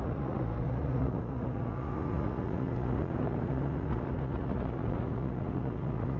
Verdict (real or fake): fake